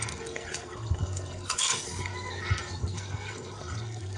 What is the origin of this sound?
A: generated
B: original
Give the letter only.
A